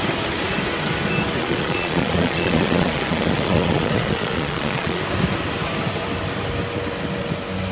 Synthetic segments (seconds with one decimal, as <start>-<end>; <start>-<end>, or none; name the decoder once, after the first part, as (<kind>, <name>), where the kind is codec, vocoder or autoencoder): 1.4-5.0 (vocoder, Vocos)